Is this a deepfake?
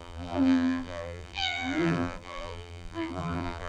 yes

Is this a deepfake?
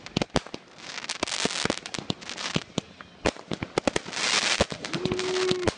no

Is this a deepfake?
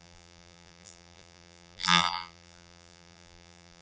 yes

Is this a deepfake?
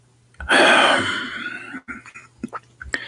no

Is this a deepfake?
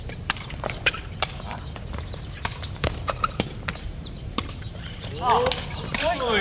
yes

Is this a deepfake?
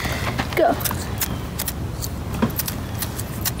no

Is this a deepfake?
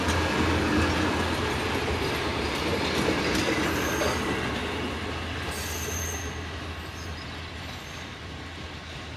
no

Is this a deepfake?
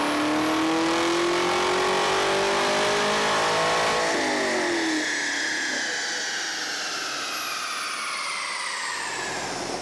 no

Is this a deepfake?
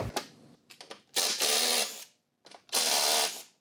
no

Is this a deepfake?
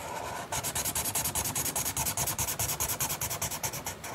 no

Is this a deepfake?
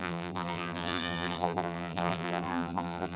yes